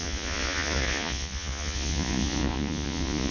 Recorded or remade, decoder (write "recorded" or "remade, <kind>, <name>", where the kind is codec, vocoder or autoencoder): remade, vocoder, Vocos